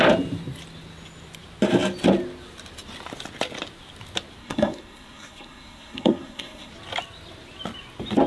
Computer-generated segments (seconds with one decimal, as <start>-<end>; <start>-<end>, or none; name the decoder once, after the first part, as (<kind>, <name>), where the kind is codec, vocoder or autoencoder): 4.4-6.7 (codec, SNAC)